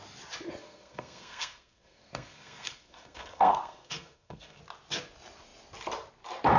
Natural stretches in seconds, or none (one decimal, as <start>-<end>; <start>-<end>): 0.0-0.6; 4.6-6.6